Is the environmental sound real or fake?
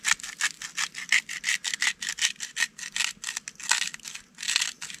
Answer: real